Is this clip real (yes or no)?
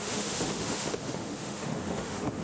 no